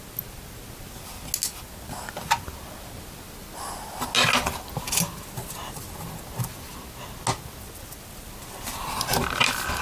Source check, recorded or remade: recorded